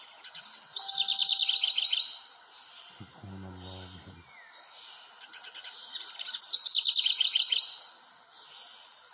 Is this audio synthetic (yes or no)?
no